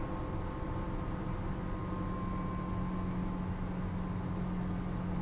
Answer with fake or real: real